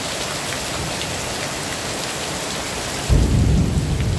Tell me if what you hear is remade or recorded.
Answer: recorded